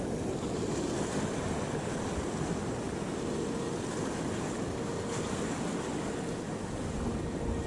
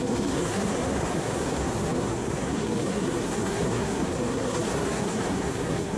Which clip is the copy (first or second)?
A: second